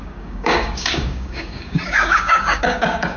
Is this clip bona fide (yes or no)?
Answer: no